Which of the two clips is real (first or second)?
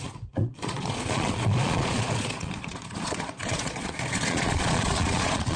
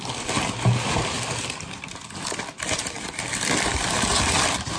second